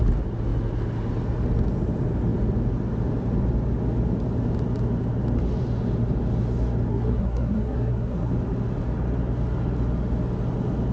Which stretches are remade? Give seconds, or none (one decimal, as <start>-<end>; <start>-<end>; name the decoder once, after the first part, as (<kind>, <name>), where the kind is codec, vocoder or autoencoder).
6.9-8.3 (codec, SNAC)

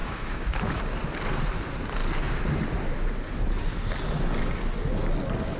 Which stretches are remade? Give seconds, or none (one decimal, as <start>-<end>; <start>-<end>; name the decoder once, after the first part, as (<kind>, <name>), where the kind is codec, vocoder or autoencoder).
0.0-0.8 (autoencoder, DAC-VAE)

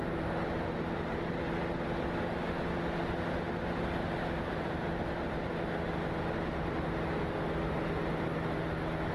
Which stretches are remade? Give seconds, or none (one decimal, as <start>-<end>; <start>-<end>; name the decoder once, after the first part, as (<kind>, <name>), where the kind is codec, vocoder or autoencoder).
0.0-1.5 (vocoder, BigVGAN v2); 4.5-5.5